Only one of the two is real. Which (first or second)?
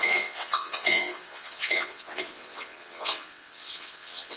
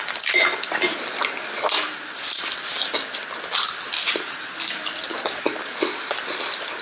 second